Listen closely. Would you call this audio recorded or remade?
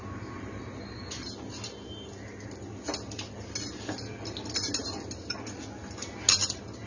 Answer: recorded